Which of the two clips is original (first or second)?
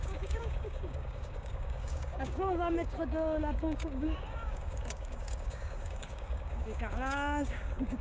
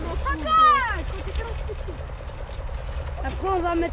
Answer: second